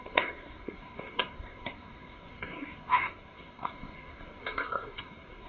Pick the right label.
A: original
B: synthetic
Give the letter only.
B